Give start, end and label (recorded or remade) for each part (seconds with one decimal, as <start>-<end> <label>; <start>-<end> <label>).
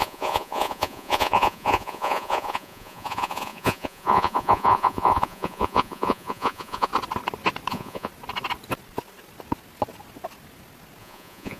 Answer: 0.0-6.9 remade; 6.9-7.7 recorded; 7.7-8.1 remade; 8.1-11.0 recorded; 11.0-11.6 remade